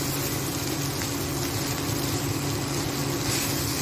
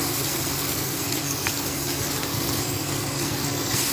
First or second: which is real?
first